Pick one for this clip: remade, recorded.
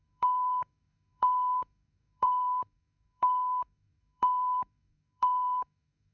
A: remade